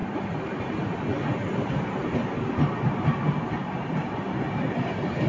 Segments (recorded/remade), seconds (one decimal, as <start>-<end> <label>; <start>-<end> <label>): 0.0-0.6 remade; 0.6-3.6 recorded; 3.6-5.3 remade